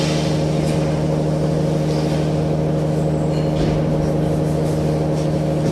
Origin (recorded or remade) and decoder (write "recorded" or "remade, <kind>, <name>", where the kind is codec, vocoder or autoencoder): recorded